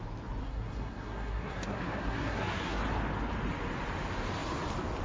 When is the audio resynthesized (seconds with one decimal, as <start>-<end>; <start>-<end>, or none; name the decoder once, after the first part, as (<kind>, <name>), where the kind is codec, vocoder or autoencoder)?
0.4-2.8 (codec, SNAC)

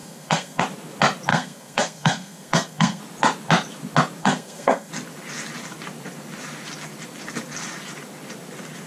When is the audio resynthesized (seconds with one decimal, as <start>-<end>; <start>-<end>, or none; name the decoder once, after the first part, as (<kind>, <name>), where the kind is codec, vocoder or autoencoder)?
0.0-0.6 (codec, SNAC); 1.3-3.0; 4.2-4.9